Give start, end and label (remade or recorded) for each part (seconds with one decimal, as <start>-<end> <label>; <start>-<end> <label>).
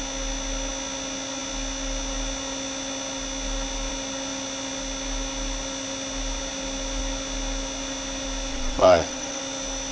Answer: 0.0-8.5 recorded; 8.5-9.4 remade; 9.4-9.9 recorded